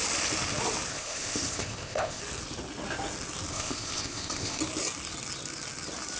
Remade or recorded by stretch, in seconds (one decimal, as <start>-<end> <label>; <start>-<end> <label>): 0.0-0.9 recorded; 0.9-2.2 remade; 2.2-3.5 recorded; 3.5-4.6 remade; 4.6-6.2 recorded